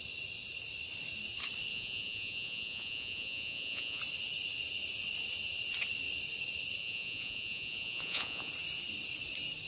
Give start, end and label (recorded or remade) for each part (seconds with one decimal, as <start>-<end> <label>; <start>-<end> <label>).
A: 0.0-1.7 recorded; 1.7-4.0 remade; 4.0-6.8 recorded; 6.8-8.5 remade; 8.5-9.7 recorded